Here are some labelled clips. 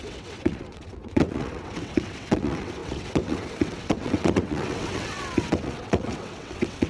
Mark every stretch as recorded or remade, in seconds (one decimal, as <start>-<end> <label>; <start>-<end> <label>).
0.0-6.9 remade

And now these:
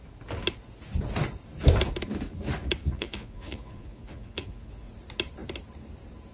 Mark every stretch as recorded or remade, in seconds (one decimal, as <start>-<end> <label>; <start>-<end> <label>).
0.0-2.8 recorded; 2.8-4.9 remade; 4.9-6.3 recorded

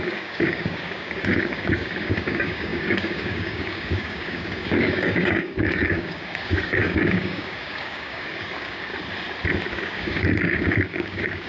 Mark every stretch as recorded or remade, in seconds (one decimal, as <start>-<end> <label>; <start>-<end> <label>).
0.0-8.9 remade; 8.9-9.7 recorded; 9.7-11.5 remade